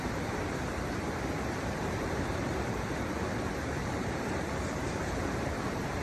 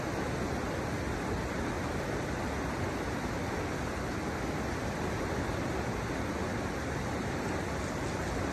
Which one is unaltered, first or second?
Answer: second